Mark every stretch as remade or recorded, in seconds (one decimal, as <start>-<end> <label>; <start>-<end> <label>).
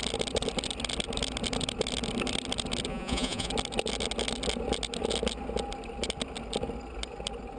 0.0-2.9 recorded; 2.9-3.5 remade; 3.5-7.6 recorded